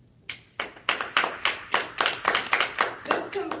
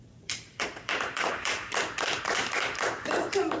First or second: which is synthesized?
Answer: second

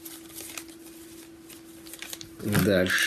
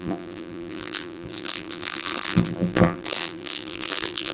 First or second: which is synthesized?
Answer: second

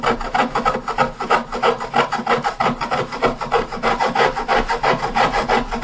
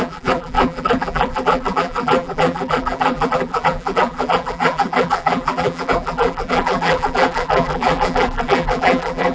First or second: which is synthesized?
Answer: second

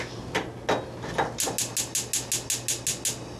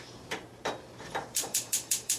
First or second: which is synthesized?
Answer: second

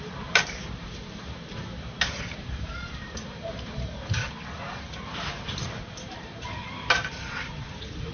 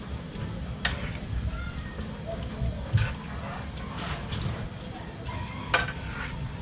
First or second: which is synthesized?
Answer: first